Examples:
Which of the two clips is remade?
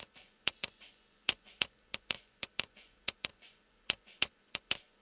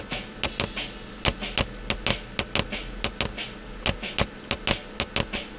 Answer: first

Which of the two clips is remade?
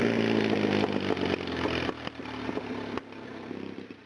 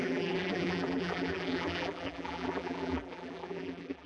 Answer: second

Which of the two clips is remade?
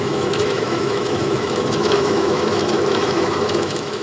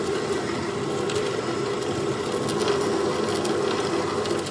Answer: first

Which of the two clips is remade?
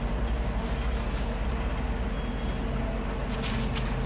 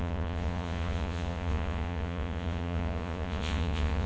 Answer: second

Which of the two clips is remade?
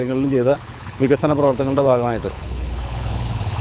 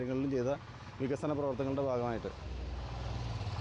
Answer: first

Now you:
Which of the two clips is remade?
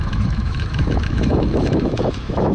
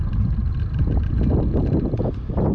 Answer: first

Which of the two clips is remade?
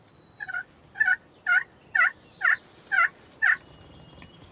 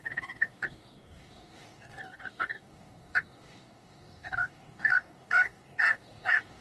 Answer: second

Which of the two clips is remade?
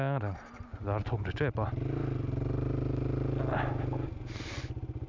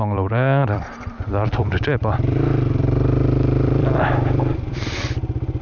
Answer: second